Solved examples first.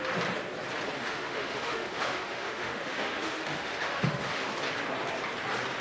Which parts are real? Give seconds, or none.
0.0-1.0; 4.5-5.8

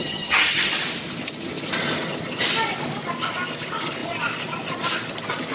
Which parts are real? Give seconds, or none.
0.7-5.5

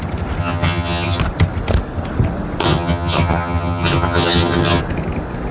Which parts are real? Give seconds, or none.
0.0-0.4; 1.2-2.6; 4.8-5.5

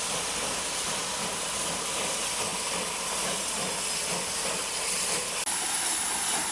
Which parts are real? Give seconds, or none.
0.0-6.5